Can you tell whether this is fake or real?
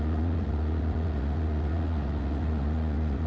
fake